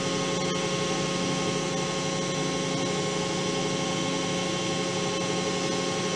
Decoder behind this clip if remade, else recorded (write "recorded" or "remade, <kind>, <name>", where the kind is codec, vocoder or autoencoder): recorded